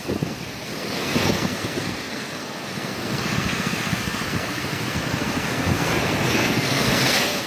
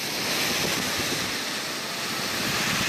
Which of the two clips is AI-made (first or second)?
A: first